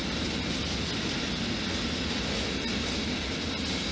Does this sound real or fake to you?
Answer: real